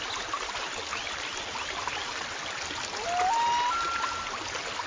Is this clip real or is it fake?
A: real